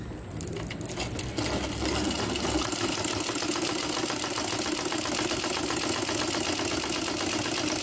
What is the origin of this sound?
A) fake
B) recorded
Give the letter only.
B